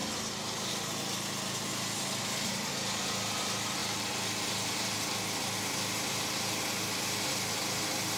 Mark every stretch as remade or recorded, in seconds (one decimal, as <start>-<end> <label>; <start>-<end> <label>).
0.0-8.2 recorded